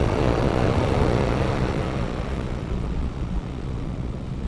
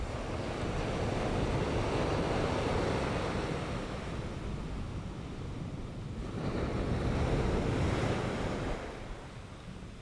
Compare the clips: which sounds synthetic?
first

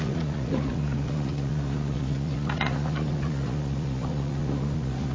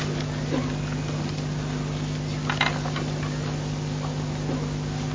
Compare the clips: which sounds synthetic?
first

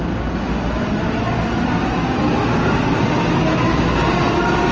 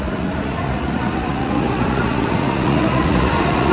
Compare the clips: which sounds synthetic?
second